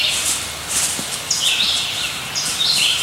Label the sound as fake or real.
real